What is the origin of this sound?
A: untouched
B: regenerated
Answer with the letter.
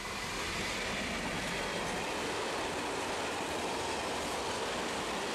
A